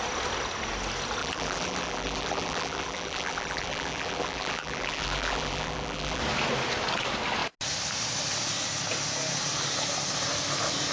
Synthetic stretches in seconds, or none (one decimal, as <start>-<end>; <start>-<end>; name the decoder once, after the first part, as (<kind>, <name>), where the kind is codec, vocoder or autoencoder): 1.2-6.2 (vocoder, BigVGAN v2)